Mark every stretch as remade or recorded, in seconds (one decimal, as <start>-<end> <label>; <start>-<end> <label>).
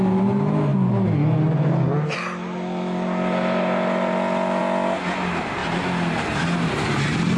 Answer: 0.0-7.4 recorded